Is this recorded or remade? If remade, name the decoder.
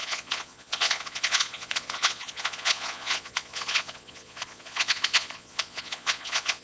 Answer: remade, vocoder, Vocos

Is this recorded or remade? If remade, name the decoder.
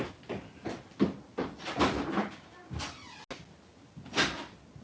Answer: recorded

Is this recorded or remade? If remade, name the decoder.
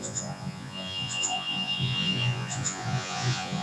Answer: remade, vocoder, Vocos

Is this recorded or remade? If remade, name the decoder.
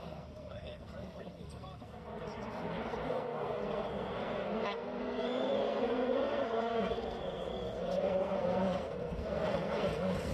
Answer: remade, codec, SNAC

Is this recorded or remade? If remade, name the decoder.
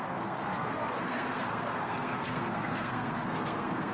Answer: remade, codec, SNAC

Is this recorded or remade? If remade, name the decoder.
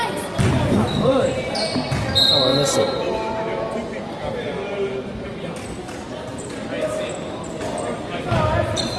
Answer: recorded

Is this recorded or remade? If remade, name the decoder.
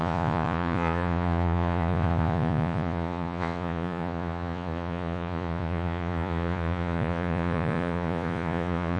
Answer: remade, vocoder, Vocos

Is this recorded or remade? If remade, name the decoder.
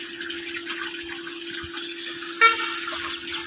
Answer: recorded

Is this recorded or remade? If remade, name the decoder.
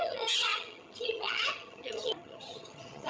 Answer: remade, vocoder, HiFi-GAN